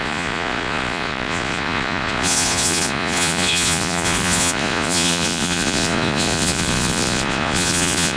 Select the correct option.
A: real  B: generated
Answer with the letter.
B